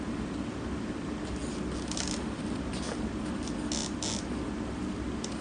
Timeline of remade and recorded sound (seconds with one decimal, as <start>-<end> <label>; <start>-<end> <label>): 0.0-5.4 recorded